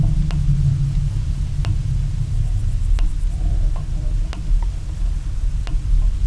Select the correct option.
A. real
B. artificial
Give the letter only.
A